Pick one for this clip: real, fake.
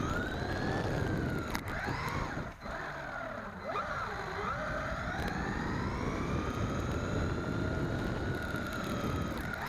real